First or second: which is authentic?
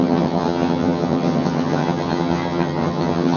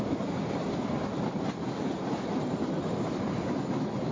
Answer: second